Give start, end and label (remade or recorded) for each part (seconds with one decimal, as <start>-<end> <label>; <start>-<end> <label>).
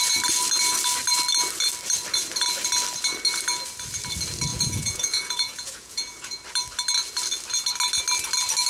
0.0-4.5 recorded; 4.5-6.4 remade; 6.4-8.7 recorded